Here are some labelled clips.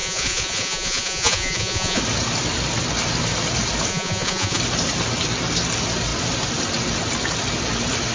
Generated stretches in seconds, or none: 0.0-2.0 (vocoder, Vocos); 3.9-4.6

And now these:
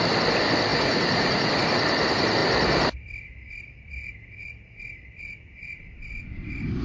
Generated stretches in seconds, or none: 0.7-1.5 (vocoder, Vocos)

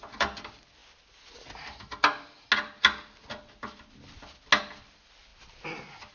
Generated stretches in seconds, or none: none

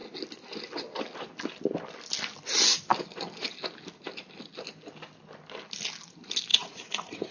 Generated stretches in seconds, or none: 6.5-7.3 (vocoder, Vocos)